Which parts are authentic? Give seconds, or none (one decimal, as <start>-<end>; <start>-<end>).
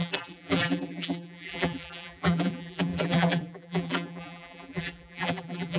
none